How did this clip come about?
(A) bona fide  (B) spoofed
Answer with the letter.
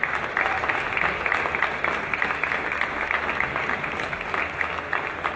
A